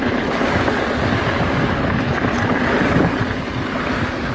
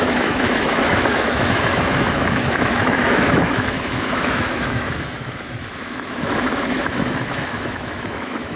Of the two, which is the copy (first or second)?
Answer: second